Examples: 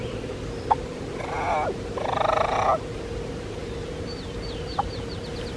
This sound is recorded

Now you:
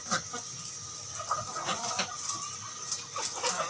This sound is recorded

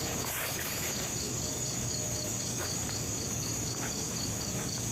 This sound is remade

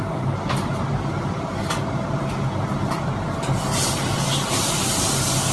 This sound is recorded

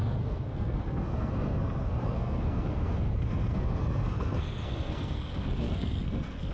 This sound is remade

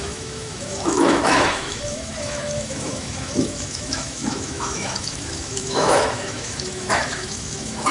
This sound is remade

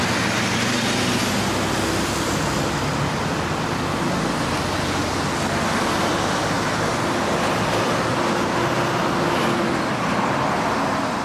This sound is recorded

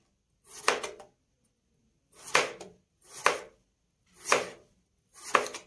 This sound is recorded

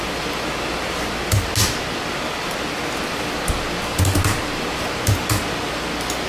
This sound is recorded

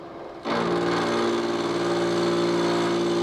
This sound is recorded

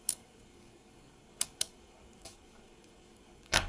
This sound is remade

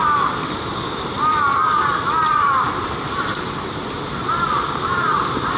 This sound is recorded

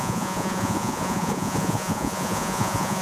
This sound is remade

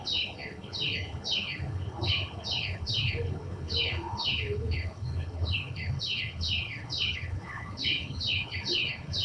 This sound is remade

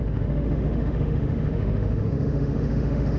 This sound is remade